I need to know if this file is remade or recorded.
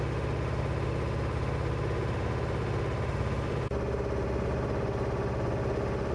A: recorded